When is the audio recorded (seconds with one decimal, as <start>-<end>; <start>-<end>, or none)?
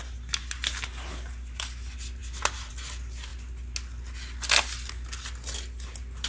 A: 0.0-6.3